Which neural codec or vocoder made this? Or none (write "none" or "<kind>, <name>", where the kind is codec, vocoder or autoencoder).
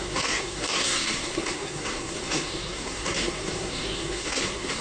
codec, SNAC